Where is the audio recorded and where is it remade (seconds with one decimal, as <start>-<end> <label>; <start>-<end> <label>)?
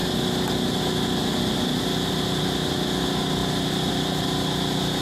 0.0-5.0 recorded